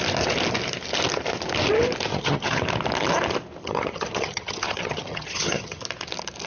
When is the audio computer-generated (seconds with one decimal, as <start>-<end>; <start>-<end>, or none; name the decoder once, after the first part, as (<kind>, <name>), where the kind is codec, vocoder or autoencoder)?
2.1-2.6 (vocoder, HiFi-GAN); 3.6-5.8